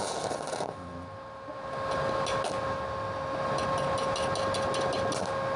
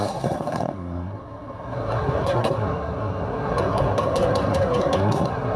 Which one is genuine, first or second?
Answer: first